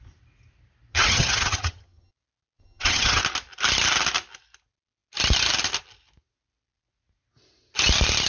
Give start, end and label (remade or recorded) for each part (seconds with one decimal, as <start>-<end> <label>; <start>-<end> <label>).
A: 0.0-0.9 recorded; 0.9-2.1 remade; 2.1-2.6 recorded; 2.6-3.2 remade; 3.2-8.3 recorded